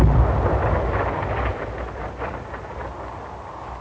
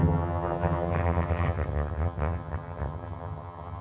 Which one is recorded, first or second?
first